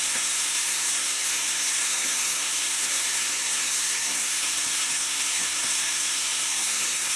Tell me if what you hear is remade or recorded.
remade